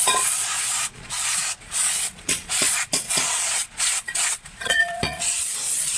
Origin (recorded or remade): remade